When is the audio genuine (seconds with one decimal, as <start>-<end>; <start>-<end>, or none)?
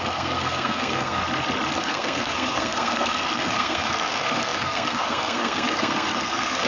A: 1.2-1.8